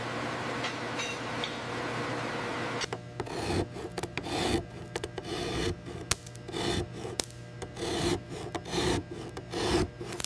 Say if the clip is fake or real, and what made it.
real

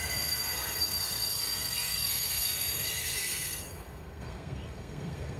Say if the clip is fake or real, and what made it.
fake, codec, SNAC